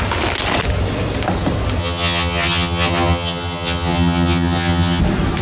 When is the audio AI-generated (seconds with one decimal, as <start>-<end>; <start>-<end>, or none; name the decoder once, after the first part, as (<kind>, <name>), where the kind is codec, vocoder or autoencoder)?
1.8-5.0 (vocoder, HiFi-GAN)